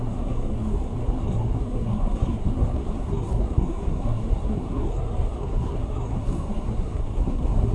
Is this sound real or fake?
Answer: fake